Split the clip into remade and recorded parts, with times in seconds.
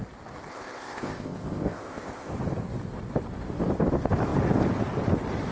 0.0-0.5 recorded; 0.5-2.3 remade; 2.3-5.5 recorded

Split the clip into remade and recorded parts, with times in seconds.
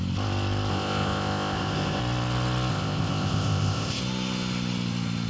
0.0-0.7 recorded; 0.7-2.0 remade; 2.0-2.7 recorded; 2.7-4.0 remade; 4.0-5.3 recorded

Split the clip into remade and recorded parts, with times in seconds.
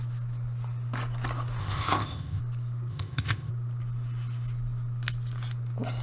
0.0-1.6 recorded; 1.6-2.4 remade; 2.4-2.9 recorded; 2.9-3.5 remade; 3.5-6.0 recorded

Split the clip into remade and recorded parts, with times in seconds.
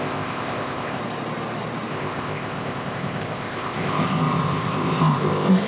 0.0-1.0 remade; 1.0-1.9 recorded; 1.9-5.7 remade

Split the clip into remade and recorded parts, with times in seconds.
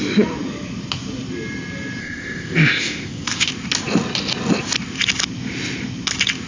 0.0-2.0 recorded; 2.0-3.5 remade; 3.5-6.5 recorded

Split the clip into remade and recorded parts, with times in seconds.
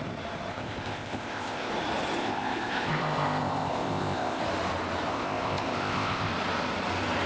0.0-0.5 recorded; 0.5-1.7 remade; 1.7-2.2 recorded; 2.2-4.4 remade; 4.4-5.1 recorded; 5.1-6.3 remade; 6.3-7.3 recorded